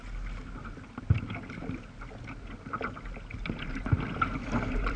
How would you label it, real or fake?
real